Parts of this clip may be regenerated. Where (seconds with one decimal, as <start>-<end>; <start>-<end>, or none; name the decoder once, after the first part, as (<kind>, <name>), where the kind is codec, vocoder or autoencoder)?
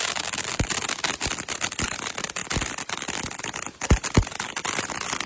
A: none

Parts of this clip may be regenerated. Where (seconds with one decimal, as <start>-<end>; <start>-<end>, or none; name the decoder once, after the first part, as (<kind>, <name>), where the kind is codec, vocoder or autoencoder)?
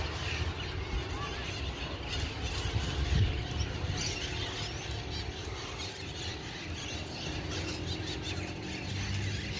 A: none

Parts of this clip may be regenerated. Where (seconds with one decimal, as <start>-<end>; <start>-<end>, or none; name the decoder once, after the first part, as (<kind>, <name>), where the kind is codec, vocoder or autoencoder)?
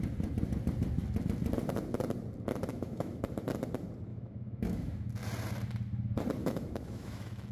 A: 2.7-3.2 (autoencoder, DAC-VAE); 4.1-5.1; 6.4-7.5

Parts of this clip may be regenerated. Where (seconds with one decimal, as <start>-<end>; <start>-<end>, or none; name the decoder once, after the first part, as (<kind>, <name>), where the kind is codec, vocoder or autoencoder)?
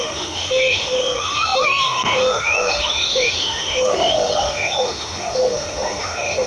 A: 0.0-6.5 (autoencoder, DAC-VAE)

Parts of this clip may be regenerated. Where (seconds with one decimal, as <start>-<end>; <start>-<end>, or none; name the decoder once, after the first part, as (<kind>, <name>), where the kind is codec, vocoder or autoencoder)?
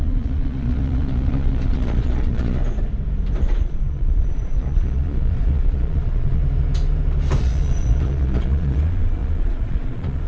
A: 0.0-2.6 (vocoder, Vocos); 3.4-6.4; 7.4-10.3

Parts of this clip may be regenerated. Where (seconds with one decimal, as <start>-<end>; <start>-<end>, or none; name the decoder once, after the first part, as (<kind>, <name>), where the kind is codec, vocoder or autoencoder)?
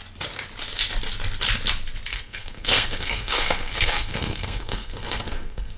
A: 2.1-5.8 (codec, SNAC)